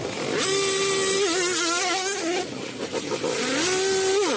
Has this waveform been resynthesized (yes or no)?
no